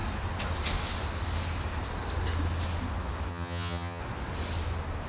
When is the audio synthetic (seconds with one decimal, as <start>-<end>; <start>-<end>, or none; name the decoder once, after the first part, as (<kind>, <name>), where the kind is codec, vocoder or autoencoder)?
3.3-4.0 (vocoder, HiFi-GAN)